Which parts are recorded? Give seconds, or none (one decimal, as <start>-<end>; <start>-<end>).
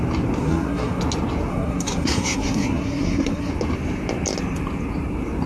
0.0-0.4; 1.0-1.5; 3.5-5.5